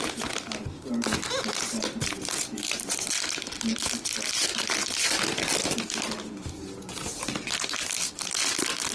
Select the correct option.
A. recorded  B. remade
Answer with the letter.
A